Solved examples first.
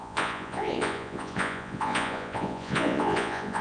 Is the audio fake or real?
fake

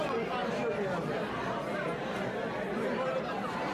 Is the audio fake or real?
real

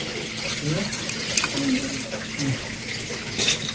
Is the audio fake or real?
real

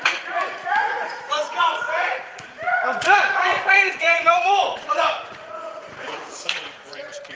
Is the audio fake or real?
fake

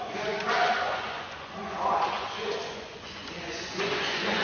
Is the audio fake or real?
fake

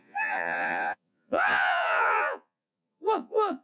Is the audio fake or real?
fake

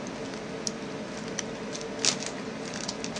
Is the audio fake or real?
real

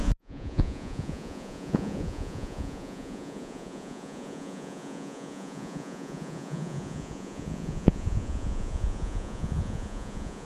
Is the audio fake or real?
fake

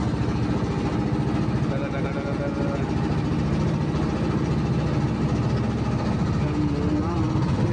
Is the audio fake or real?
real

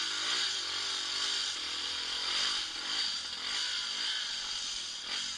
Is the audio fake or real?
real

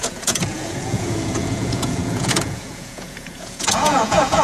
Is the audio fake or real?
fake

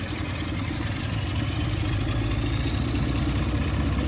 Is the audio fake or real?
real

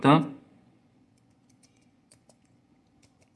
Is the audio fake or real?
fake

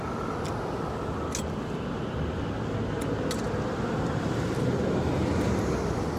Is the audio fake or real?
real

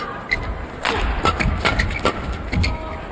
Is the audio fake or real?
real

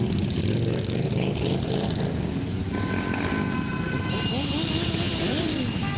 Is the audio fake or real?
real